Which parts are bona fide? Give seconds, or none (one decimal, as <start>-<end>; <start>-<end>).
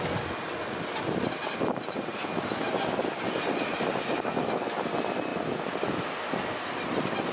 0.0-7.3